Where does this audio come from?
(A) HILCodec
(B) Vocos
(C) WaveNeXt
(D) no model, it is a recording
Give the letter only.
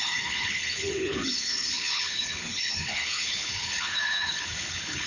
A